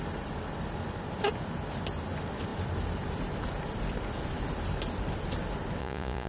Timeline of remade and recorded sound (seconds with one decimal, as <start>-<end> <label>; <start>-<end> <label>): 0.0-5.8 recorded; 5.8-6.3 remade